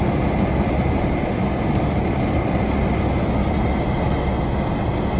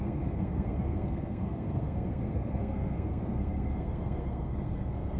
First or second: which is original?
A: first